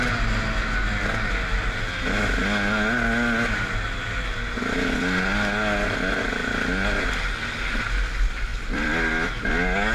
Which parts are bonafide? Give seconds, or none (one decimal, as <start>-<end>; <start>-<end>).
0.0-8.5; 9.5-9.9